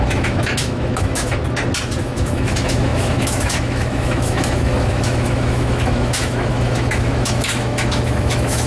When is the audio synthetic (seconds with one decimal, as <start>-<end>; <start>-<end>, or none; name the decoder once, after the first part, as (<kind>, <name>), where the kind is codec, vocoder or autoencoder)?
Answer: 0.0-1.4 (autoencoder, DAC-VAE); 2.0-8.7